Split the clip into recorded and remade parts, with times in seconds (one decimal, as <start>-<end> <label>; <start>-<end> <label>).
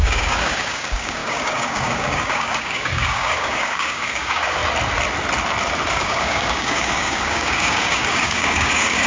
0.0-4.6 remade; 4.6-5.9 recorded; 5.9-9.1 remade